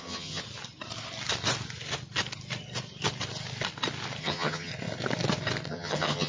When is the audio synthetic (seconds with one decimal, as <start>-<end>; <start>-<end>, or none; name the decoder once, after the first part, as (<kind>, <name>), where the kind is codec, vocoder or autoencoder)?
0.0-0.4 (vocoder, HiFi-GAN); 4.2-4.7; 5.7-6.3

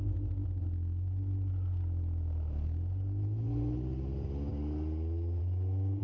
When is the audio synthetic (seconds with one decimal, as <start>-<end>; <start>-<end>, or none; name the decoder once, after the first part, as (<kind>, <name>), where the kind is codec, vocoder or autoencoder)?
none